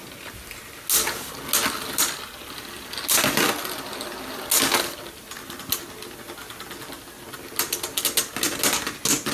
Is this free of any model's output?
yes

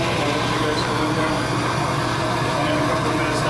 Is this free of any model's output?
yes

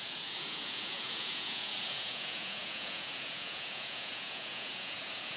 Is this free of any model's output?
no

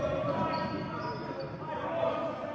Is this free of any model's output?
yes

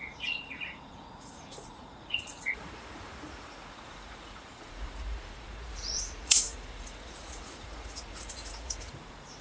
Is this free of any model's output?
no